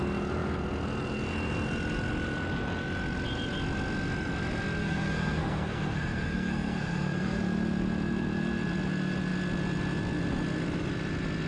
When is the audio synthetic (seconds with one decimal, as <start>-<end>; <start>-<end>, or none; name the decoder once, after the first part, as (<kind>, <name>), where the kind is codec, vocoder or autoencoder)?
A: 4.8-7.4 (codec, SNAC)